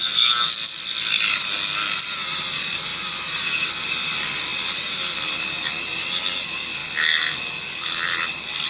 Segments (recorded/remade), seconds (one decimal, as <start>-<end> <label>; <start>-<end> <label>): 0.0-2.9 remade; 2.9-3.7 recorded; 3.7-6.8 remade; 6.8-7.6 recorded; 7.6-8.7 remade